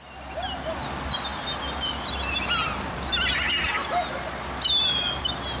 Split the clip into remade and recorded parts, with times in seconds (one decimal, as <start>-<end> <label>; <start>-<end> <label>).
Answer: 0.0-5.6 recorded

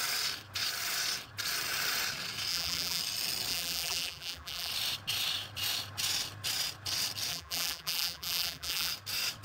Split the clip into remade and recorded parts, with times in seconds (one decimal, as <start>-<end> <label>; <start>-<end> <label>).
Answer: 0.0-2.5 recorded; 2.5-3.0 remade; 3.0-3.5 recorded; 3.5-4.7 remade; 4.7-7.3 recorded; 7.3-8.9 remade; 8.9-9.4 recorded

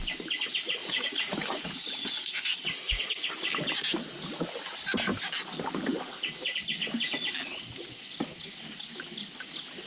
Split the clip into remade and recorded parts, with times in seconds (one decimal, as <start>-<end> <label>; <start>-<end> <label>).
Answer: 0.0-0.8 recorded; 0.8-3.1 remade; 3.1-9.9 recorded